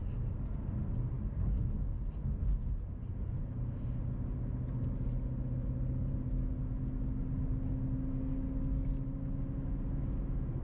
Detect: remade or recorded recorded